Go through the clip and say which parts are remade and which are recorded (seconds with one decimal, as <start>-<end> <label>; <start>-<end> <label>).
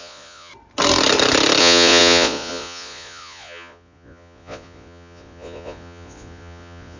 0.0-0.5 remade; 0.5-1.6 recorded; 1.6-7.0 remade